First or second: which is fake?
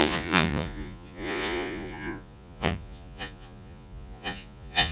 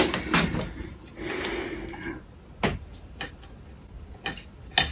first